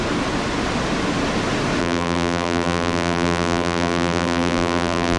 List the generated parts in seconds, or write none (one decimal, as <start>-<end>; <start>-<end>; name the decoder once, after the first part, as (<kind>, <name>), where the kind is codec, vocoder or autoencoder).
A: 1.8-5.2 (vocoder, BigVGAN v2)